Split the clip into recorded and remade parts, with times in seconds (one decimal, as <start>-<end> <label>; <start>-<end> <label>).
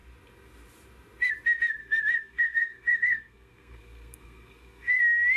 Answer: 0.0-1.8 recorded; 1.8-5.0 remade; 5.0-5.4 recorded